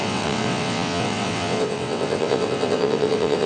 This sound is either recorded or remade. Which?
remade